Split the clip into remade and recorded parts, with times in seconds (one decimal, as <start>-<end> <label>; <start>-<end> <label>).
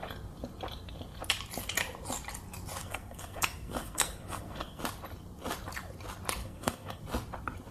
0.0-2.8 recorded; 2.8-4.8 remade; 4.8-6.4 recorded; 6.4-7.0 remade; 7.0-7.7 recorded